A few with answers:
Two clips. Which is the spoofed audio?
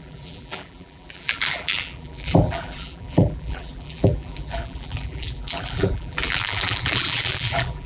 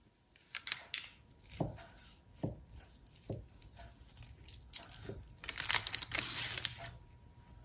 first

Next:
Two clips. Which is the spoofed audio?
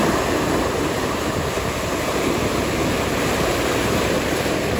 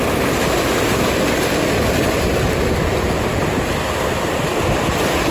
first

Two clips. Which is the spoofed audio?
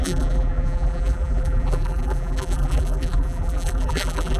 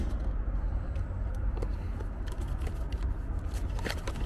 first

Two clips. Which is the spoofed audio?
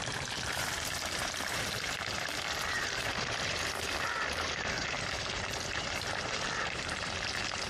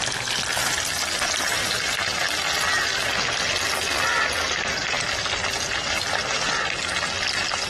first